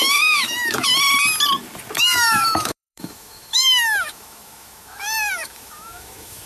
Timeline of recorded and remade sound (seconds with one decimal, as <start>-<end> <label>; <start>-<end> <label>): 0.0-0.9 remade; 0.9-2.0 recorded; 2.0-6.5 remade